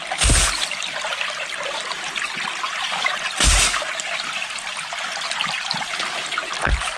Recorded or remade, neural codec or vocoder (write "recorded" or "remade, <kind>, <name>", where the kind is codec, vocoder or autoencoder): recorded